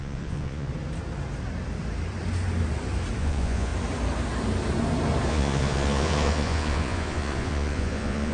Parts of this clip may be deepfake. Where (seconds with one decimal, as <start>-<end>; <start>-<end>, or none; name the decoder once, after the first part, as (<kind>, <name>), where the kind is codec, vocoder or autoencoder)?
0.0-0.7 (vocoder, Vocos); 3.2-3.7; 5.3-8.3